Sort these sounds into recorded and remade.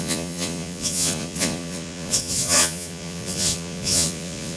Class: remade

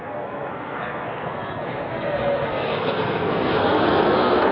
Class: remade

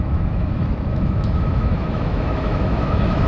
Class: remade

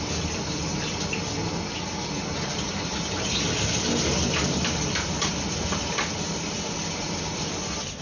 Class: recorded